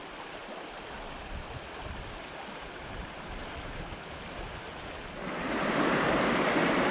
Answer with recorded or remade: recorded